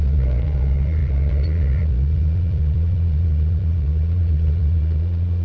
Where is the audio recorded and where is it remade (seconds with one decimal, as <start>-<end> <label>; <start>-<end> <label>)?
0.0-5.4 remade